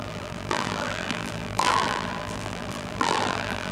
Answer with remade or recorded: remade